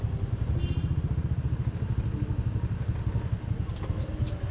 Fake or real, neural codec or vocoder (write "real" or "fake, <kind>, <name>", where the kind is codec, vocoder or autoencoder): real